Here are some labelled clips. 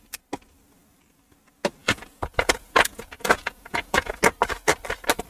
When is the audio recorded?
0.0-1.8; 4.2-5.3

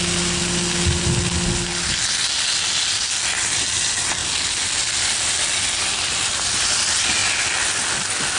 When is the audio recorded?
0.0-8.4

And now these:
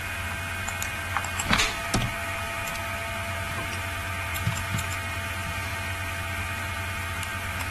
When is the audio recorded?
0.0-4.3; 4.9-7.7

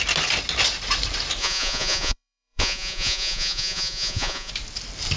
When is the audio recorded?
0.0-1.4; 4.5-5.2

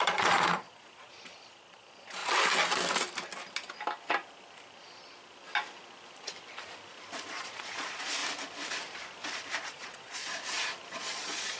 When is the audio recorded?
2.2-7.4; 8.2-9.6; 10.4-10.9